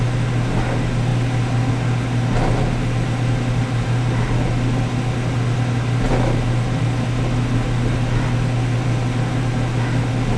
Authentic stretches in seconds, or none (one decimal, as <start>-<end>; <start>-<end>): 0.0-10.4